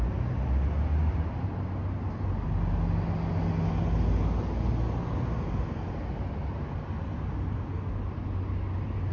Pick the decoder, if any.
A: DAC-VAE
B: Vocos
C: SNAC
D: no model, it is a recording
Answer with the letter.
D